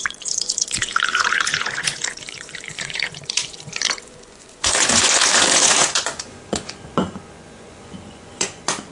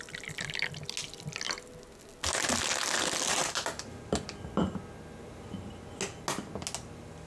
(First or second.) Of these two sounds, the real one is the second